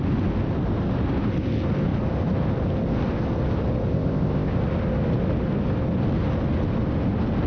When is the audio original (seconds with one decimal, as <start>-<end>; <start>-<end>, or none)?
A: 0.0-3.9; 4.6-7.5